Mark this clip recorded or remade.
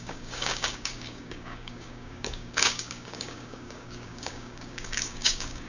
remade